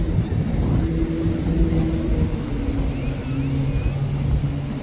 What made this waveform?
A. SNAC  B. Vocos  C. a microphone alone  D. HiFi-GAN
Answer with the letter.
C